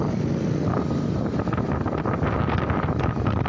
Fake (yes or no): no